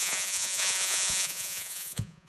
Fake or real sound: fake